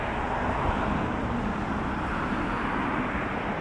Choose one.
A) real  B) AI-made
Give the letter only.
A